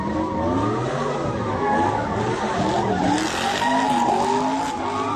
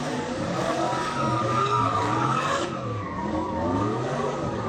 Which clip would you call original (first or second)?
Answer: first